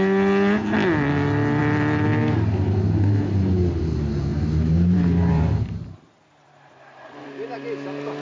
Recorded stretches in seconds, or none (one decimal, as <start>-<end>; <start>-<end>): 0.0-4.3; 7.3-8.2